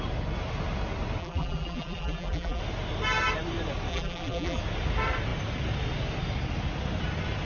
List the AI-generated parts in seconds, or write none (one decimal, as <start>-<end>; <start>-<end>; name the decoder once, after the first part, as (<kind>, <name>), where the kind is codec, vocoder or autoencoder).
1.2-2.6 (vocoder, BigVGAN v2); 3.9-4.6